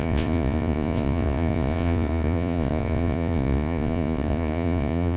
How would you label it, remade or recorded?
remade